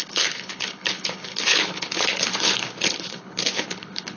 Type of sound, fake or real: fake